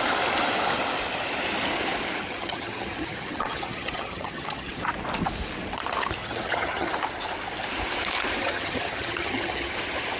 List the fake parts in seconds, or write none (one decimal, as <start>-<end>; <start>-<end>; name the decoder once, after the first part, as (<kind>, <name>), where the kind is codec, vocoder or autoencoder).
2.2-4.8 (vocoder, HiFi-GAN); 6.2-6.9; 8.4-9.7